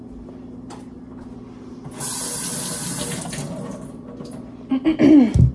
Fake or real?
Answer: real